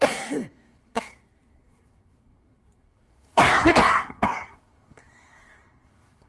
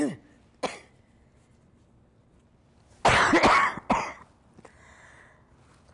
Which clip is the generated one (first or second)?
first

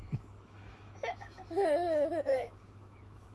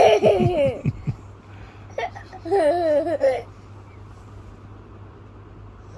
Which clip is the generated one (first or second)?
first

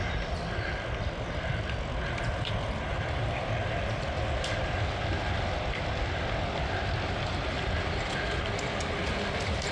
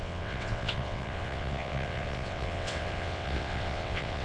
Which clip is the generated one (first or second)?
second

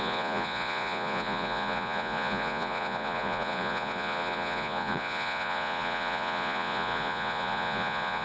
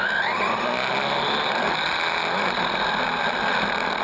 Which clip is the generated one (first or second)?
first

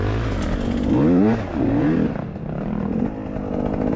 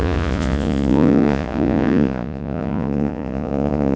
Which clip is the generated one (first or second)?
second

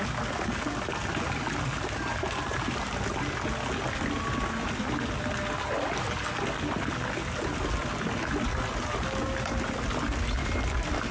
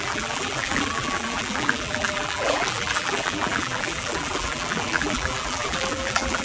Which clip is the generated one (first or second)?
second